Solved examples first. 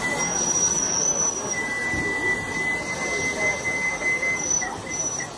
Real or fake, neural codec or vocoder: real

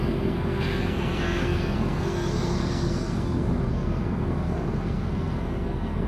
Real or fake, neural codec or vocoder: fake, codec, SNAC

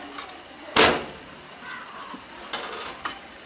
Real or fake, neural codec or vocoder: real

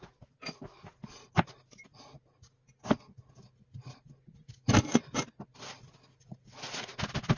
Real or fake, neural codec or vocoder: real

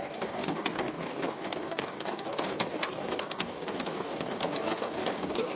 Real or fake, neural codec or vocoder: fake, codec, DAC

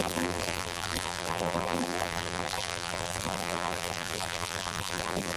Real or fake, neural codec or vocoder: fake, vocoder, BigVGAN v2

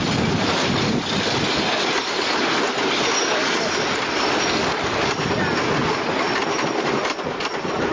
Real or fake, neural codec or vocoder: fake, vocoder, BigVGAN v2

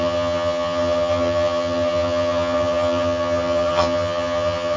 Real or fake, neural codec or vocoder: fake, vocoder, HiFi-GAN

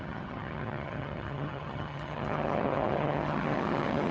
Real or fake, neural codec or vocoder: fake, vocoder, HiFi-GAN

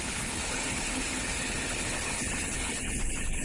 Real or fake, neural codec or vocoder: fake, codec, HILCodec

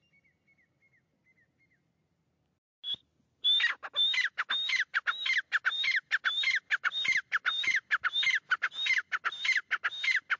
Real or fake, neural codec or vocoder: real